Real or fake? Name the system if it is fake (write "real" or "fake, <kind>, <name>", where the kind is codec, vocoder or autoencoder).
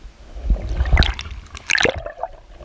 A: real